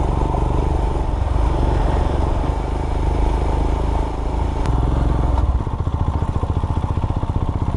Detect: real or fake real